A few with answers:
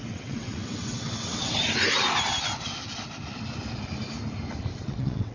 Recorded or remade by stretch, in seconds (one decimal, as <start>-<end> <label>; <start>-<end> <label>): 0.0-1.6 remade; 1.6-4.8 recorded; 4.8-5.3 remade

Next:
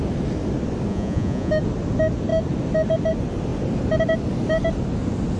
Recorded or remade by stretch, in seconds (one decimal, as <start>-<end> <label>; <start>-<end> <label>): 0.0-0.9 recorded; 0.9-1.5 remade; 1.5-5.4 recorded

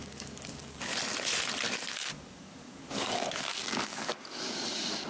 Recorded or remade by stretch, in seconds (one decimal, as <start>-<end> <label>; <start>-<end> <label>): 0.0-0.9 remade; 0.9-1.9 recorded; 1.9-5.1 remade

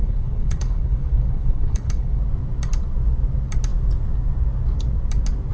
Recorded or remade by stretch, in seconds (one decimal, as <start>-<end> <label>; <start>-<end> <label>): 0.0-2.2 remade; 2.2-5.5 recorded

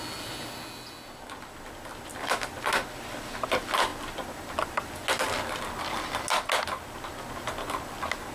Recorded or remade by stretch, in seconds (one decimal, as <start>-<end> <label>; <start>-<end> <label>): 0.0-8.3 recorded

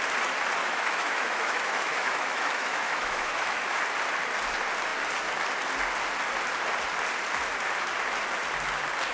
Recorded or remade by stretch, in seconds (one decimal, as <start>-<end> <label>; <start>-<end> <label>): 0.0-0.6 recorded; 0.6-3.8 remade; 3.8-9.1 recorded

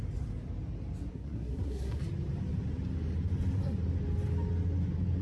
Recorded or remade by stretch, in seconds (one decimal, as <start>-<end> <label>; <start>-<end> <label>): 0.0-1.1 recorded; 1.1-2.0 remade; 2.0-5.2 recorded

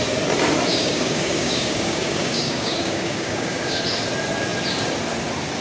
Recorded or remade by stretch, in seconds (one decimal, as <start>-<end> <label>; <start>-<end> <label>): 0.0-0.7 recorded; 0.7-3.8 remade; 3.8-5.6 recorded